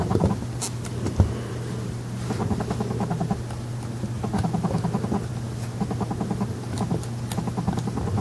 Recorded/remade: recorded